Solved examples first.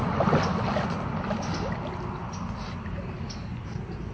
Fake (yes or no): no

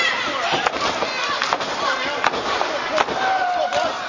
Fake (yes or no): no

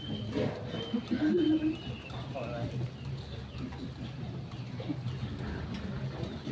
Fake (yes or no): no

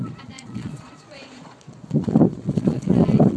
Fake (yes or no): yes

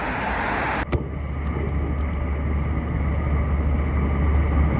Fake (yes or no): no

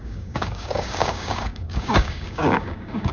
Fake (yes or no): yes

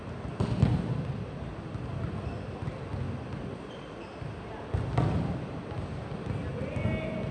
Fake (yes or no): no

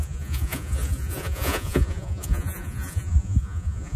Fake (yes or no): yes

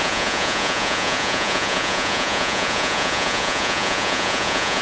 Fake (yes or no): yes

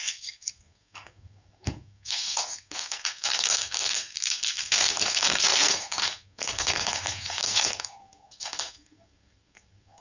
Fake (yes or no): yes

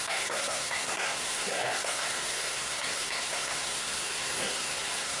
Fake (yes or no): yes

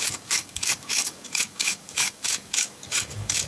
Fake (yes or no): yes